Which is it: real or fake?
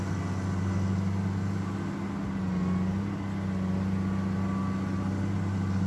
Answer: real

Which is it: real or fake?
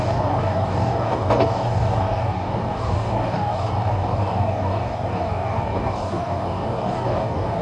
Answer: fake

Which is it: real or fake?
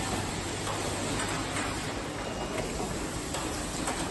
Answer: real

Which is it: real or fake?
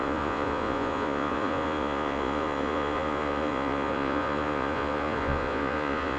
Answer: fake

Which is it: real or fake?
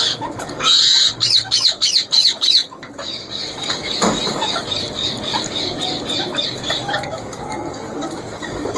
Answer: fake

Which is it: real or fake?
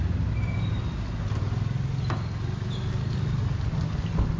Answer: real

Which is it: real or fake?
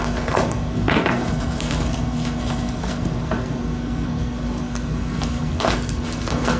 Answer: fake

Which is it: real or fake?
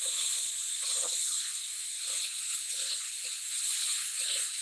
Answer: fake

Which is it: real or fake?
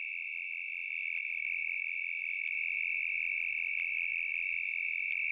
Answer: fake